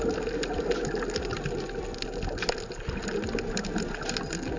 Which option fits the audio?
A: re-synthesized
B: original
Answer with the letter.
B